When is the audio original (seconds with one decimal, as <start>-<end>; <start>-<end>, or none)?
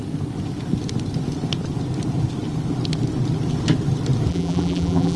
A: 0.0-4.3